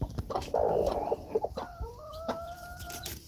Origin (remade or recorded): remade